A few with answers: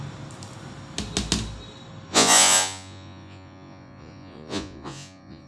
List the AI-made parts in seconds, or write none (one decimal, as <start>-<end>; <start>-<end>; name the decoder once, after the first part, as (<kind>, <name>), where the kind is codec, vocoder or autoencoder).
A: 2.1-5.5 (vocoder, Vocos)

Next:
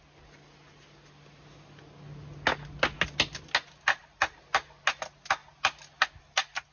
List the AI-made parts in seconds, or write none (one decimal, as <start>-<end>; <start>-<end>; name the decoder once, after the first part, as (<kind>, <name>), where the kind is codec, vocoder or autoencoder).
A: none

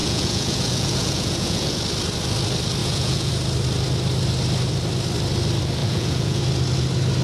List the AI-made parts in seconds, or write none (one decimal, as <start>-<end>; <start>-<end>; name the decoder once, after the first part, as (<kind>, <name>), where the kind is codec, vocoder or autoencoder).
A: 0.0-1.8 (vocoder, Vocos); 2.8-3.3; 5.8-6.4

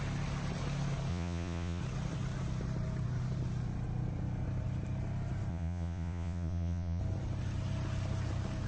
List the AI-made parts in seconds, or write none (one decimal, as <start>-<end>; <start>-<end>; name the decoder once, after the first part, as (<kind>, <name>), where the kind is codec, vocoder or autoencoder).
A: 1.1-1.8 (vocoder, Vocos); 5.5-7.0